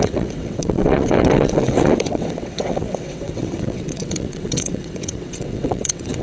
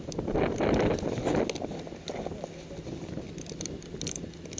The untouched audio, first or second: second